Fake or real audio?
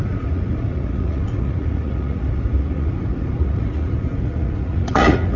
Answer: fake